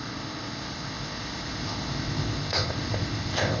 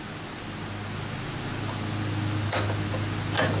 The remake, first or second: first